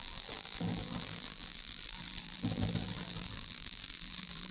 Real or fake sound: fake